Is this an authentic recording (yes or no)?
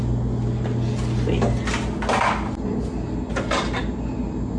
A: yes